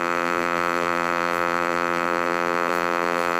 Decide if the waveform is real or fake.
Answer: fake